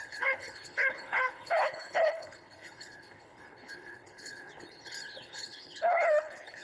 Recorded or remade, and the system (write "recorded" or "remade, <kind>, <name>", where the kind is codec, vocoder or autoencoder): remade, codec, HILCodec